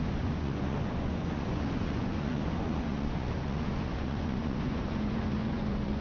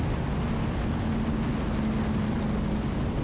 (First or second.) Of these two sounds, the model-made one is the first